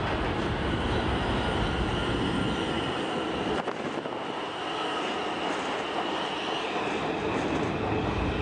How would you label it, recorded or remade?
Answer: recorded